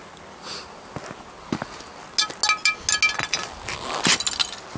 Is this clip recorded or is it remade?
recorded